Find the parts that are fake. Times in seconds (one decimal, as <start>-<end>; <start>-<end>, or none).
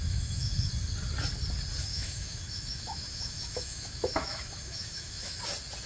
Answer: 0.0-0.7; 1.9-5.4